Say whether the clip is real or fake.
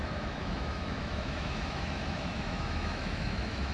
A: fake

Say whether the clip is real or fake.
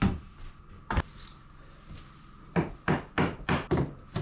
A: real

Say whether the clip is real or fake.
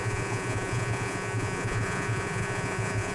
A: fake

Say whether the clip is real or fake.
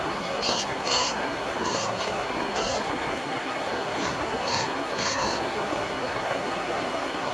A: fake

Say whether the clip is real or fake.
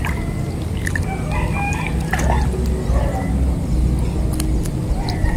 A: real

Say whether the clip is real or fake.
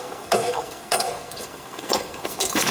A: fake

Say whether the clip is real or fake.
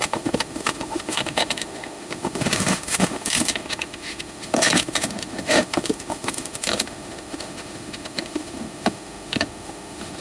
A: fake